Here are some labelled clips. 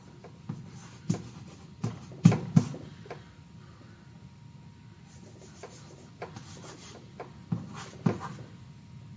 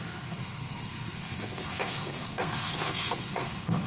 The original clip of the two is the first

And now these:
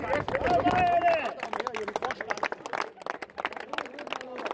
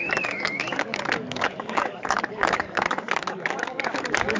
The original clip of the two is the first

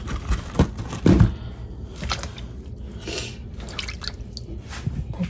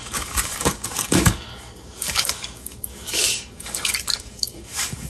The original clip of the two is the first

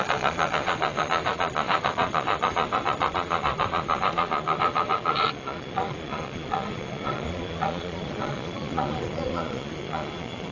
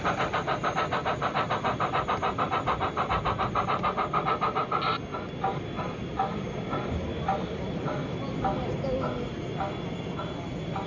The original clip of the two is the second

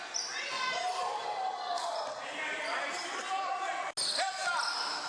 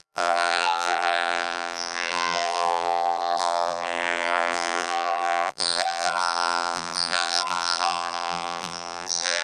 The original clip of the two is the first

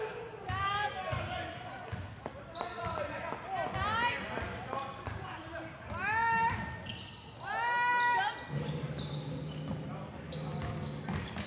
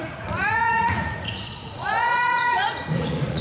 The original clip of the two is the first